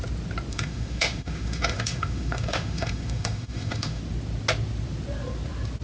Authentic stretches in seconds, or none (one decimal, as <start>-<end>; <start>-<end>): 0.0-0.5; 4.0-5.8